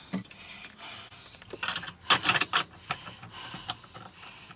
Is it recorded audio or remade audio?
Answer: recorded